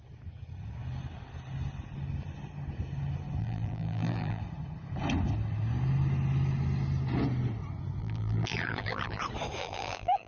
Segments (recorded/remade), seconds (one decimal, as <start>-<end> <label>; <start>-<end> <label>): 0.0-3.4 recorded; 3.4-4.4 remade; 4.4-8.0 recorded; 8.0-9.2 remade; 9.2-9.6 recorded; 9.6-10.3 remade

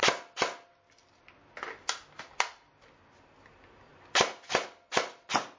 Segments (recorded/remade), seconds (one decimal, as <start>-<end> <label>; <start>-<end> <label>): 0.0-5.6 recorded

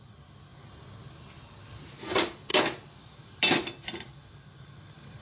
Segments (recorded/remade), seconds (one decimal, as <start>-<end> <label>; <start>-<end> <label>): 0.0-0.5 remade; 0.5-1.7 recorded; 1.7-2.5 remade; 2.5-3.0 recorded; 3.0-5.2 remade

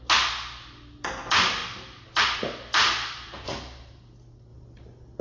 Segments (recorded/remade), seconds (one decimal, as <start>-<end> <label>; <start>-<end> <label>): 0.0-5.2 recorded

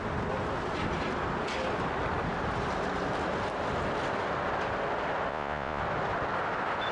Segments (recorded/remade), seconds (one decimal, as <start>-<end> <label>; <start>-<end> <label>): 0.0-5.3 recorded; 5.3-5.8 remade; 5.8-6.9 recorded

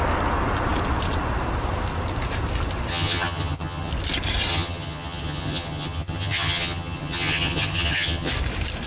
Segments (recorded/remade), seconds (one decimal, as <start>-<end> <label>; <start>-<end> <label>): 0.0-2.9 recorded; 2.9-3.9 remade; 3.9-4.5 recorded; 4.5-8.3 remade; 8.3-8.9 recorded